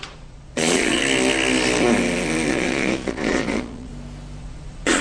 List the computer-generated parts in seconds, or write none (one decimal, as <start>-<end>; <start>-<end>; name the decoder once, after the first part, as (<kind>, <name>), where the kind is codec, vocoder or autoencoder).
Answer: 0.0-1.0 (vocoder, Vocos); 2.5-3.9; 4.4-5.0